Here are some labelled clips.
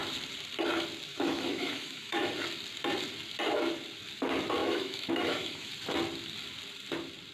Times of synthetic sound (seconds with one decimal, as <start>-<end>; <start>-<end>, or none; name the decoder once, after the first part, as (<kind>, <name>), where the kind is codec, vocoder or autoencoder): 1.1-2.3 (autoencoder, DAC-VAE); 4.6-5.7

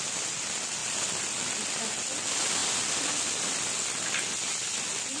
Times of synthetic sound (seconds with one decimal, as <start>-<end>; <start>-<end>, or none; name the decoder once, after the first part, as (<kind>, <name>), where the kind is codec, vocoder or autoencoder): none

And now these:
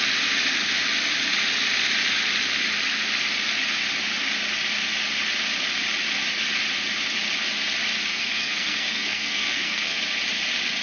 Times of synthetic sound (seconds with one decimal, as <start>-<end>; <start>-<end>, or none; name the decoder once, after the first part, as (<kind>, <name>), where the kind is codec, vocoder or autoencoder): 8.1-10.0 (codec, SNAC)

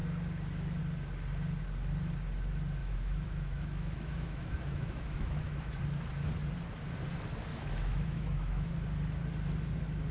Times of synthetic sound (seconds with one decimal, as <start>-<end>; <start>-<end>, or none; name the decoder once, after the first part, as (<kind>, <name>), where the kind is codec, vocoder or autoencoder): 2.8-5.8 (autoencoder, DAC-VAE); 7.5-8.7